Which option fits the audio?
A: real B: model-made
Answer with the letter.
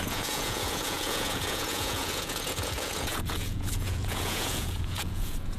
B